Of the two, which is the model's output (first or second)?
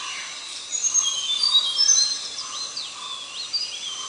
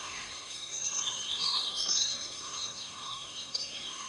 second